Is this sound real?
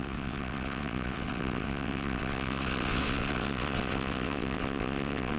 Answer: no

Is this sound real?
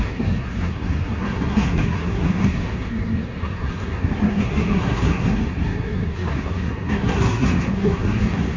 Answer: no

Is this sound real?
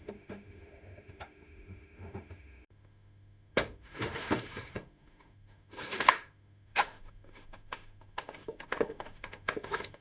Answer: no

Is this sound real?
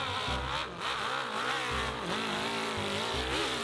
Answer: yes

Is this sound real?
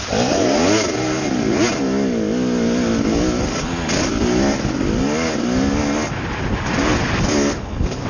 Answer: yes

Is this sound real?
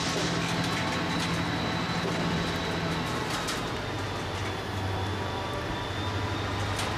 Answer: yes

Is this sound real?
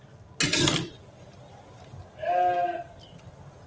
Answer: yes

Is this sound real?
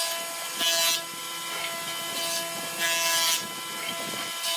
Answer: yes